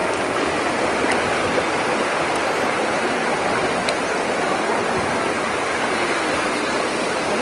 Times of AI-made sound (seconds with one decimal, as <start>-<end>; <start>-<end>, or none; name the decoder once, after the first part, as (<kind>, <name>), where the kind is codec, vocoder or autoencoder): none